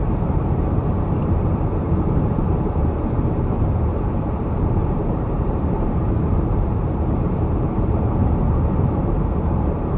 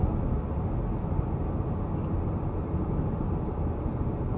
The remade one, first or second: first